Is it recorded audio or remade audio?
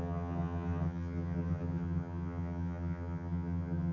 remade